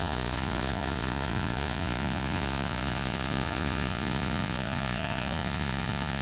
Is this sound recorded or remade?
remade